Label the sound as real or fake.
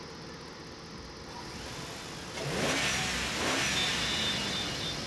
real